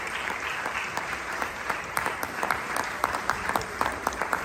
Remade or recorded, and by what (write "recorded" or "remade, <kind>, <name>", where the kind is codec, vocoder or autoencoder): remade, vocoder, BigVGAN v2